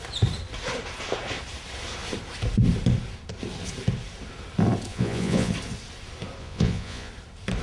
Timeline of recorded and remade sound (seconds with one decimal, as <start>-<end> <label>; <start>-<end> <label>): 0.0-4.9 recorded; 4.9-5.5 remade; 5.5-6.4 recorded; 6.4-7.1 remade; 7.1-7.6 recorded